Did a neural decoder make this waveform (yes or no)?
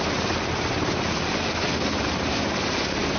no